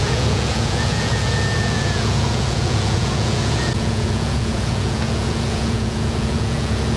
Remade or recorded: remade